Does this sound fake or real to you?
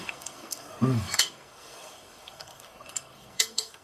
fake